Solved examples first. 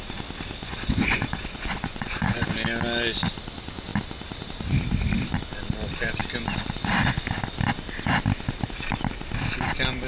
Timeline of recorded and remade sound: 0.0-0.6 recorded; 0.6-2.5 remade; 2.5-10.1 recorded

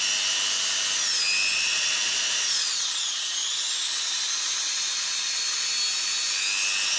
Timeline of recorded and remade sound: 0.0-1.5 recorded; 1.5-5.7 remade; 5.7-7.0 recorded

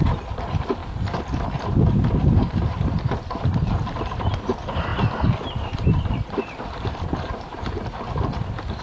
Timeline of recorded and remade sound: 0.0-0.8 remade; 0.8-1.6 recorded; 1.6-4.9 remade; 4.9-5.6 recorded; 5.6-8.8 remade